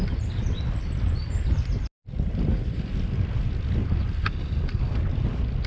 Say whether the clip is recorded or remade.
recorded